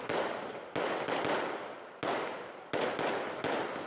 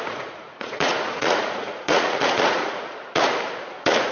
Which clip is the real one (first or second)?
first